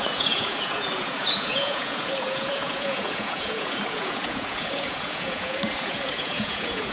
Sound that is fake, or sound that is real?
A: fake